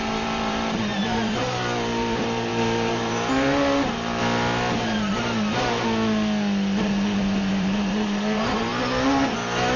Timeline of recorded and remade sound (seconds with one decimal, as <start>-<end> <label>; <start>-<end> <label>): 0.0-4.2 remade; 4.2-7.5 recorded; 7.5-8.7 remade; 8.7-9.8 recorded